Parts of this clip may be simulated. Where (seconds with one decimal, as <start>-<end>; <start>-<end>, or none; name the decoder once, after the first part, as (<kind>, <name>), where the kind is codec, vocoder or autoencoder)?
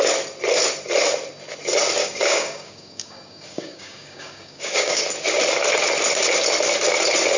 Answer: 2.0-5.0 (codec, DAC)